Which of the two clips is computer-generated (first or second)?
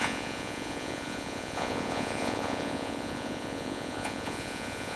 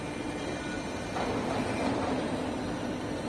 first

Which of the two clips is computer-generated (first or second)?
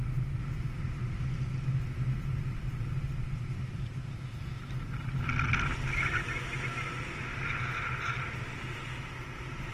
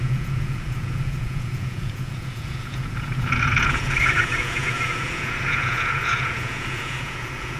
second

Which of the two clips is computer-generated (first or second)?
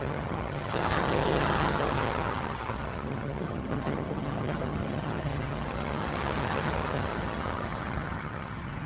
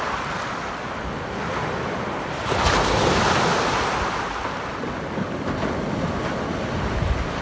first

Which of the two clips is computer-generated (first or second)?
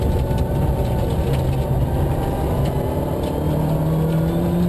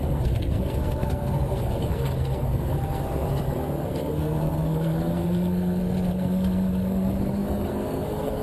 second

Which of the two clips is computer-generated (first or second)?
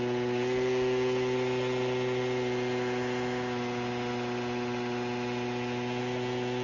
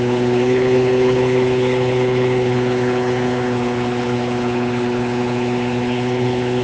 second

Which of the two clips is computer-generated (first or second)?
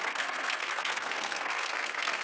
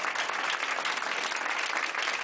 first